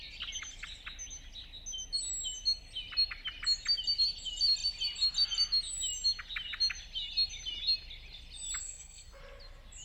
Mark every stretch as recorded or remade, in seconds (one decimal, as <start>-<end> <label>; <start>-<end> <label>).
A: 0.0-8.6 recorded; 8.6-9.2 remade; 9.2-9.8 recorded